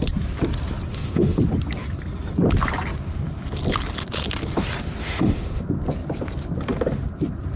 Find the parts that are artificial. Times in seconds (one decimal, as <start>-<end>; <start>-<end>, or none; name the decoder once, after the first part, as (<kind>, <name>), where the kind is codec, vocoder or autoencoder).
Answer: 0.9-1.4 (autoencoder, DAC-VAE); 5.0-5.6